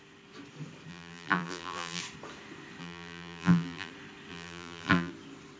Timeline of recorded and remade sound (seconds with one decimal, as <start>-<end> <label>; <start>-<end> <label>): 0.0-0.9 recorded; 0.9-2.0 remade; 2.0-2.8 recorded; 2.8-3.9 remade; 3.9-4.3 recorded; 4.3-5.1 remade; 5.1-5.6 recorded